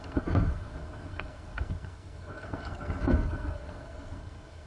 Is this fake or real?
fake